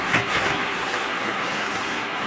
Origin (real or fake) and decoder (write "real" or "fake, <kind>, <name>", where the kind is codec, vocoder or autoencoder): fake, codec, SNAC